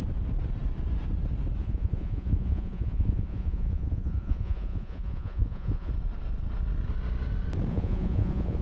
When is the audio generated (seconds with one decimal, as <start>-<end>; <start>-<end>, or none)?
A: 1.6-5.9; 7.7-8.6